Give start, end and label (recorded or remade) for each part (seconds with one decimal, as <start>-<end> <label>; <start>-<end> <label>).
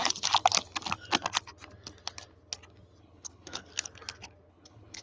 0.0-3.0 recorded; 3.0-3.7 remade; 3.7-4.5 recorded; 4.5-5.0 remade